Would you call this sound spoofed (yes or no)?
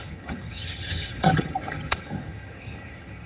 yes